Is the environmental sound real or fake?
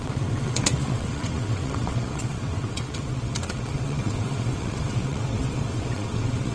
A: fake